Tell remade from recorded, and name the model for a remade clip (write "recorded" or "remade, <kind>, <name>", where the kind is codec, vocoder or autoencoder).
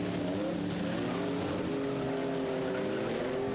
recorded